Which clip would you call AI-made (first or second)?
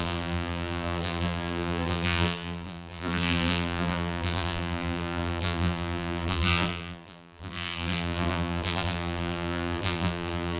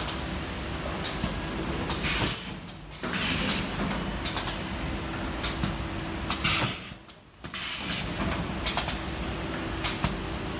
first